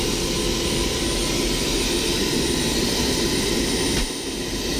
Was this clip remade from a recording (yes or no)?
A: no